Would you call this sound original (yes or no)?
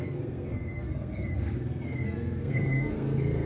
no